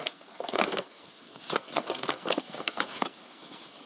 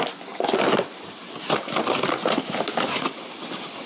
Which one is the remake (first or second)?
first